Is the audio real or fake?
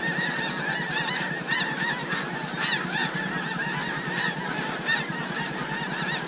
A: real